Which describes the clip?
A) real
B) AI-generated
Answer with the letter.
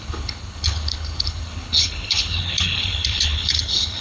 B